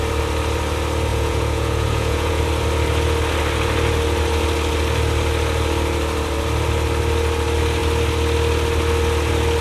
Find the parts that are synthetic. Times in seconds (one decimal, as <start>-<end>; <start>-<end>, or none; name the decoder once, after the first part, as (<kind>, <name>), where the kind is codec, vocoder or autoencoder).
1.1-2.4 (vocoder, Vocos)